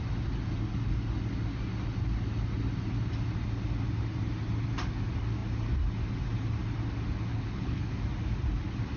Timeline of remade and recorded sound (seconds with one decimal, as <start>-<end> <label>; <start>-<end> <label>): 0.0-7.3 recorded; 7.3-7.9 remade; 7.9-9.0 recorded